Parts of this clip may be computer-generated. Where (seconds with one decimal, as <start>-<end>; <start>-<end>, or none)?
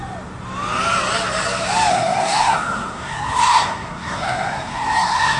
1.9-5.4